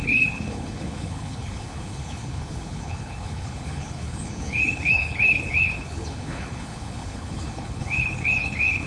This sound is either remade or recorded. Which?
remade